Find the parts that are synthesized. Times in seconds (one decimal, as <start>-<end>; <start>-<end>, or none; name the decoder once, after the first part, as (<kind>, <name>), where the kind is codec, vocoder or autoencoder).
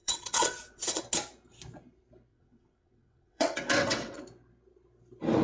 0.0-1.0 (vocoder, WaveNeXt); 2.3-4.2